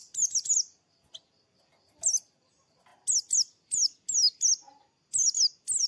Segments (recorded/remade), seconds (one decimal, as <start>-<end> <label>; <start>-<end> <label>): 0.0-5.9 recorded